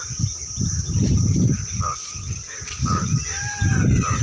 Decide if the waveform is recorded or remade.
remade